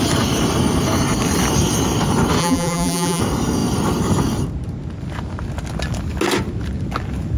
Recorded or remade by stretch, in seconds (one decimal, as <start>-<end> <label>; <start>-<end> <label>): 0.0-2.4 recorded; 2.4-3.2 remade; 3.2-7.4 recorded